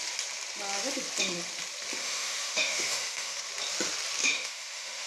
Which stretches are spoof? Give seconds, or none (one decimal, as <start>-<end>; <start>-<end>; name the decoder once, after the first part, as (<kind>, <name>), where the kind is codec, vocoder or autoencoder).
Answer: 2.0-3.4 (autoencoder, DAC-VAE); 4.2-5.1